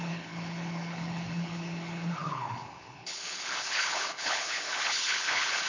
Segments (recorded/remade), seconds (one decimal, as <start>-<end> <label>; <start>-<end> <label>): 0.0-5.7 remade